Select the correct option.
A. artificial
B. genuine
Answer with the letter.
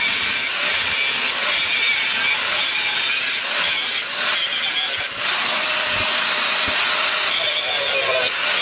B